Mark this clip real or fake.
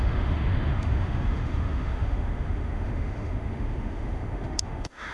fake